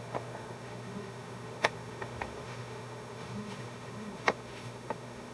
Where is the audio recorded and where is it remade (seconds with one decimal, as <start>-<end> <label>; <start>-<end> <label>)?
0.0-5.3 remade